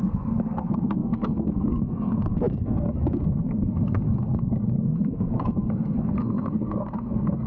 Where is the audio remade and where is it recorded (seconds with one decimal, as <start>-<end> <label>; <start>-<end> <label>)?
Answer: 0.0-7.5 remade